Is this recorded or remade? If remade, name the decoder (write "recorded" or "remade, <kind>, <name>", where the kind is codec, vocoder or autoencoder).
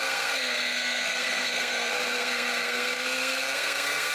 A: remade, codec, SNAC